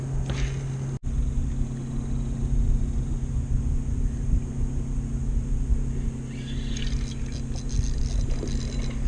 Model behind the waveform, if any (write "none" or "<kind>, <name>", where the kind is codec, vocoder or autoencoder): none